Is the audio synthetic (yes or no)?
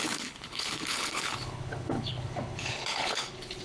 yes